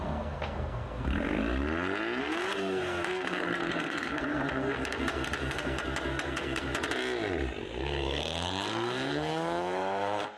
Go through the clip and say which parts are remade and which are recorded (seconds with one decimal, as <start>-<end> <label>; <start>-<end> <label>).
0.0-1.4 remade; 1.4-2.2 recorded; 2.2-6.7 remade; 6.7-7.6 recorded; 7.6-10.4 remade